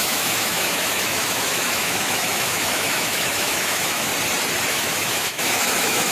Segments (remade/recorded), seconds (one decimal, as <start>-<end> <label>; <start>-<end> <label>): 0.0-4.1 remade; 4.1-4.7 recorded; 4.7-6.1 remade